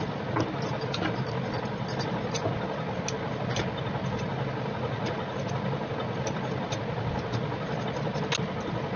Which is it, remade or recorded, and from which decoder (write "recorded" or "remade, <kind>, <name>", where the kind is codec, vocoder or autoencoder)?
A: recorded